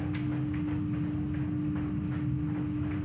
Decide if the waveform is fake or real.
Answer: real